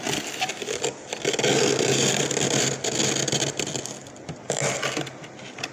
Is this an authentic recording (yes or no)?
yes